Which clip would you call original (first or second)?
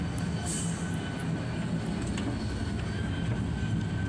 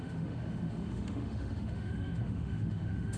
first